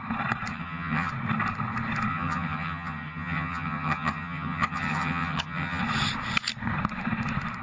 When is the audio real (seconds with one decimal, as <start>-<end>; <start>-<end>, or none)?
0.0-0.5; 1.1-2.1; 5.8-7.6